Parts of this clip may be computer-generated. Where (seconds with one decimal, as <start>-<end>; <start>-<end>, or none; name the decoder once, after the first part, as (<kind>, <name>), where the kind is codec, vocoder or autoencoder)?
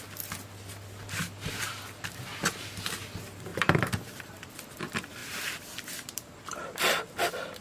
3.5-4.5 (vocoder, BigVGAN v2); 5.2-6.6